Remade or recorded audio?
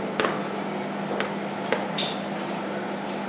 recorded